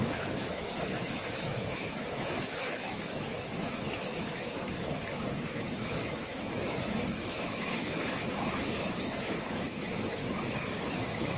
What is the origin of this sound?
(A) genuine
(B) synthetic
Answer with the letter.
B